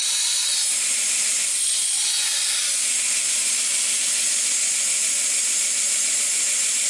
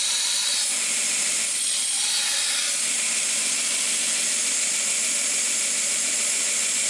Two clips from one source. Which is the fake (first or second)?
second